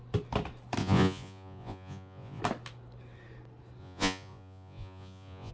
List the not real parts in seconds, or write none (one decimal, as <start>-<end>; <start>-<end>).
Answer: 0.8-2.4; 3.8-5.5